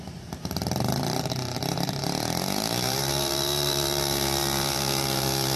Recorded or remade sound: remade